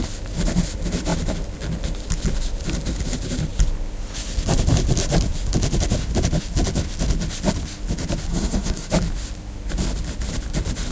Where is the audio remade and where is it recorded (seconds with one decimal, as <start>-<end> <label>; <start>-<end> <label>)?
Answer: 0.0-8.3 recorded; 8.3-8.9 remade; 8.9-10.9 recorded